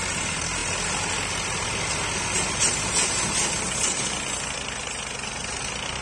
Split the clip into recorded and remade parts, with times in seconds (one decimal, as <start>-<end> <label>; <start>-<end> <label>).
0.0-6.0 recorded